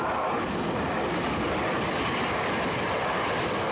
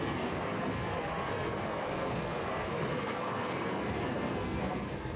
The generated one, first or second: second